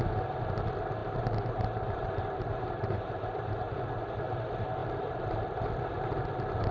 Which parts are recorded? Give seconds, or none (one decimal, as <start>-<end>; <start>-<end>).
0.0-1.0; 3.8-4.8; 5.4-6.7